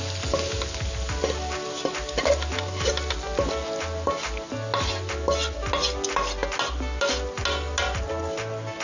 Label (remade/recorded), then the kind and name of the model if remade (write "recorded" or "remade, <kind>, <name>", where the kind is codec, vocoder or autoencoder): recorded